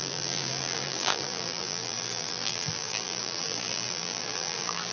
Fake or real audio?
fake